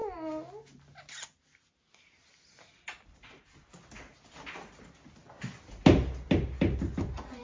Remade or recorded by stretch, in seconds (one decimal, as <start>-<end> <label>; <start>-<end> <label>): 0.0-7.4 recorded